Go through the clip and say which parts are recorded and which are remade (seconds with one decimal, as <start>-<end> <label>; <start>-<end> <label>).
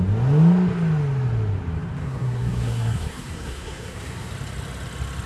0.0-2.0 recorded; 2.0-4.3 remade; 4.3-5.3 recorded